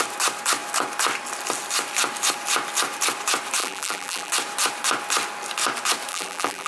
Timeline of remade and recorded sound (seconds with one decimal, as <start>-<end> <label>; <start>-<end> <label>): 0.0-3.6 recorded; 3.6-4.3 remade; 4.3-6.1 recorded; 6.1-6.7 remade